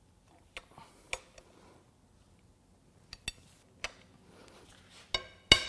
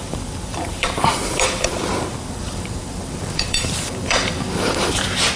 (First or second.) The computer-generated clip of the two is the second